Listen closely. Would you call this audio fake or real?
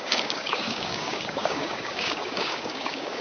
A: fake